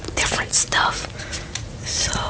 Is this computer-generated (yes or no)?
yes